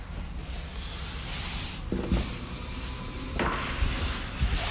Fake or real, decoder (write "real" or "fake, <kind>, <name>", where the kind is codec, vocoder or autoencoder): real